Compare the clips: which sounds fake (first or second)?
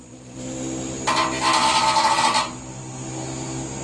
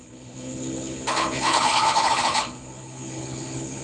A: second